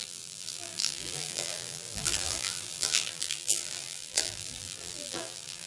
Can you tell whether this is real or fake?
fake